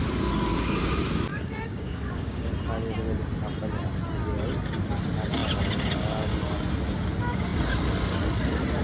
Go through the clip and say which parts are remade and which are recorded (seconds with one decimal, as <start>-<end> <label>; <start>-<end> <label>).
0.0-1.3 recorded; 1.3-2.5 remade; 2.5-8.8 recorded